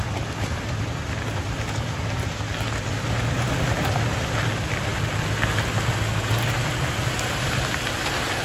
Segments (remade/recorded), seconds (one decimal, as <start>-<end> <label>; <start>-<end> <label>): 0.0-8.4 recorded